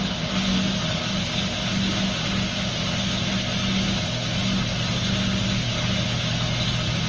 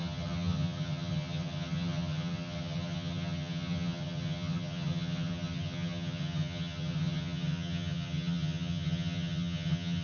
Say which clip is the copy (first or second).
second